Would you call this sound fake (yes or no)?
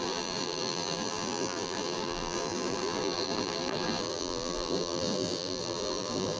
yes